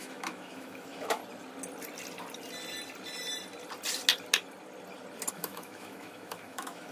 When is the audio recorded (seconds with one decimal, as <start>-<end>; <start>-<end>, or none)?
1.2-5.3